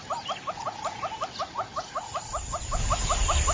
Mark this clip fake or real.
real